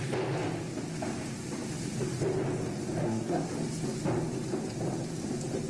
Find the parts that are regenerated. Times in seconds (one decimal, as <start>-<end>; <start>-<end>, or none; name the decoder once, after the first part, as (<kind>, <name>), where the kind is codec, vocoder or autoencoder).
3.0-3.5 (codec, SNAC)